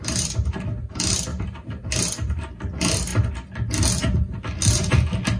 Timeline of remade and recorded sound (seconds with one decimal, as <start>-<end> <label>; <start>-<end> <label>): 0.0-1.3 recorded; 1.3-2.0 remade; 2.0-5.4 recorded